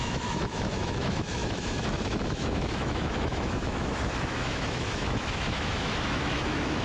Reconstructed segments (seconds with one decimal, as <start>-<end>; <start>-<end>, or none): 0.0-6.8